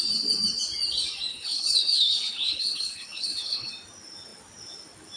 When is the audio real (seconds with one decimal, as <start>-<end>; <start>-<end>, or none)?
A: 0.0-1.3; 3.7-5.2